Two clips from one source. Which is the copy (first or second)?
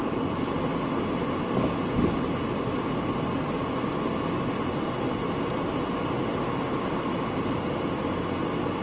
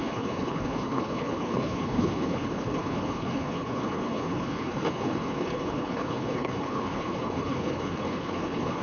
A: second